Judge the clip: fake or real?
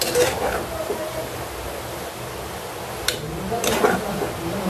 real